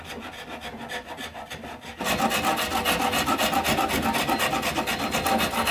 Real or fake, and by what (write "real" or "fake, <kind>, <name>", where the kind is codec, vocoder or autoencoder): real